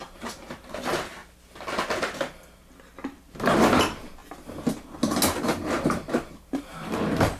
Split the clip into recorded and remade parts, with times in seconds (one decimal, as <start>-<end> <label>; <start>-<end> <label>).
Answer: 0.0-1.2 remade; 1.2-3.8 recorded; 3.8-4.2 remade; 4.2-5.4 recorded; 5.4-7.4 remade